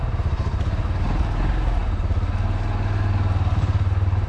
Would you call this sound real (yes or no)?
yes